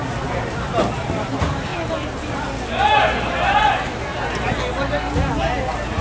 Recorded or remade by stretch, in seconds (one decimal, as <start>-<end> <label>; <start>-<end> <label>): 0.0-6.0 recorded